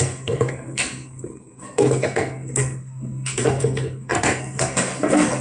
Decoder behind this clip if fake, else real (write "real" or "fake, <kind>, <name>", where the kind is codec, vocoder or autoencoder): fake, codec, SNAC